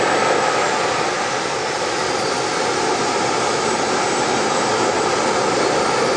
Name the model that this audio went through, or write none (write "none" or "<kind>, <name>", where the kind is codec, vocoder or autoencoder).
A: none